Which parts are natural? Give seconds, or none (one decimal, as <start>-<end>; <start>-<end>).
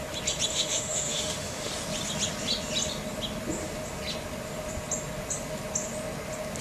0.0-0.5; 1.7-6.6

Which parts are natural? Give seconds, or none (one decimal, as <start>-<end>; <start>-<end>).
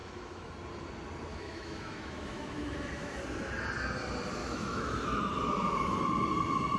0.5-1.3; 3.2-4.4; 5.2-6.8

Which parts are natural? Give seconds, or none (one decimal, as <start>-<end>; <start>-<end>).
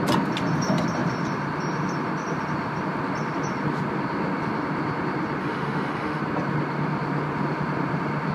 0.0-5.4; 6.2-8.3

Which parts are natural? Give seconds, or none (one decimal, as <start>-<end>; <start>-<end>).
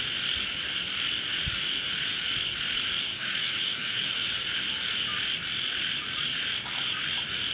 0.0-3.1; 4.3-7.5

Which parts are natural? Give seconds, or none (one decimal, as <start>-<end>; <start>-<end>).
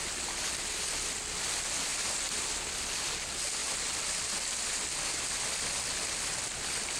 0.0-7.0